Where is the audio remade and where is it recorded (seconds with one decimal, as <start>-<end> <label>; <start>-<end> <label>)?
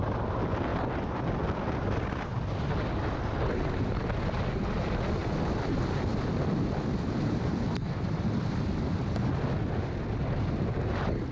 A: 0.0-0.7 recorded; 0.7-1.3 remade; 1.3-5.2 recorded; 5.2-8.8 remade; 8.8-11.3 recorded